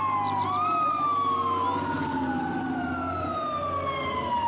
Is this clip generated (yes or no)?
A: no